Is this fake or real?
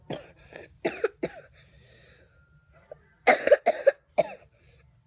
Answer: real